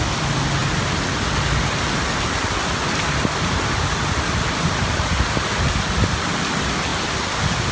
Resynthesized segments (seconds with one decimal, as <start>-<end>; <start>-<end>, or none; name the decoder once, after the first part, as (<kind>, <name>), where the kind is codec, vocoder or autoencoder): none